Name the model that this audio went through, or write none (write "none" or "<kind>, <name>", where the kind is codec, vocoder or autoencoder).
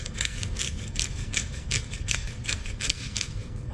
codec, SNAC